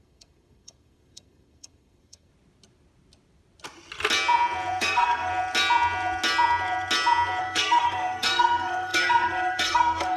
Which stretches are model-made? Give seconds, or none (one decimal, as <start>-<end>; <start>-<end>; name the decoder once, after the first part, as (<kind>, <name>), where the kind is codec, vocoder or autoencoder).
0.0-2.3 (codec, SNAC); 4.8-5.3; 7.4-10.2